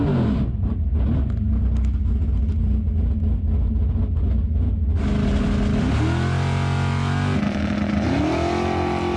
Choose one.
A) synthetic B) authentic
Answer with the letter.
B